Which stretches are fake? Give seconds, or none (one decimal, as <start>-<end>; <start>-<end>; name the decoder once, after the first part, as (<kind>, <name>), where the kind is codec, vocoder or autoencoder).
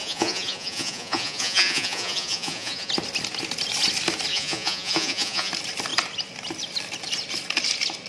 0.0-2.9 (vocoder, Vocos); 4.3-5.5